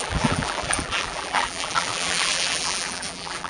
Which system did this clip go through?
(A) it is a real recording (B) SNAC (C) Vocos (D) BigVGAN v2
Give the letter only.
D